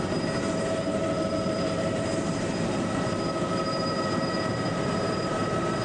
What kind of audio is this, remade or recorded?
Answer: remade